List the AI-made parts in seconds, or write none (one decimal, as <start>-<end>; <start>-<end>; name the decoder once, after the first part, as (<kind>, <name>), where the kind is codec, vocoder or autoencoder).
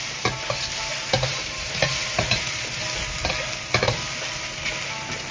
0.9-2.8 (vocoder, BigVGAN v2)